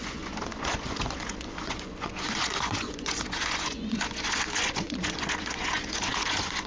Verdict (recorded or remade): remade